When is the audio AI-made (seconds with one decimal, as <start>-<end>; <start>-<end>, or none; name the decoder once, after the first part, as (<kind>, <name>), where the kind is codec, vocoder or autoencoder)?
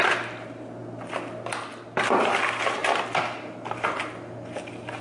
none